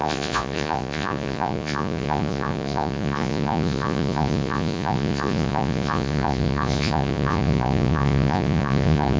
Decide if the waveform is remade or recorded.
remade